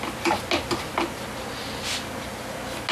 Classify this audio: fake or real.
real